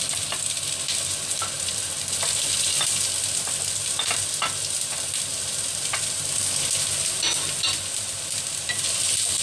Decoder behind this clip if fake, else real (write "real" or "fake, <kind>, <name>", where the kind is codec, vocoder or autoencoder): real